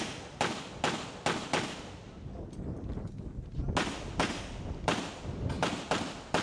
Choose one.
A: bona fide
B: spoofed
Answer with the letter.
A